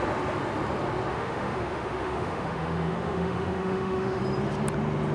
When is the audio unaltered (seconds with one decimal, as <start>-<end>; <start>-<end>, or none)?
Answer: 0.0-1.1; 4.2-5.1